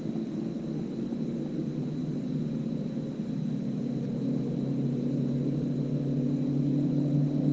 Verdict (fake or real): real